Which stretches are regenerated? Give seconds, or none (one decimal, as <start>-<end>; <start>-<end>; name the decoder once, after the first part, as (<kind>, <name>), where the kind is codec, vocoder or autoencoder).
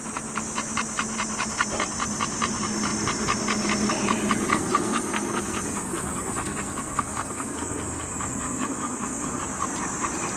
4.5-9.4 (codec, SNAC)